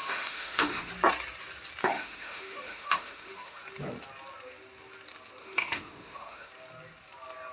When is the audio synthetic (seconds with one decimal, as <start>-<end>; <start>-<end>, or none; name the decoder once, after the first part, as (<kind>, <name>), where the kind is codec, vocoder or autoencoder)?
0.0-0.9 (autoencoder, DAC-VAE); 1.8-3.6; 5.4-6.5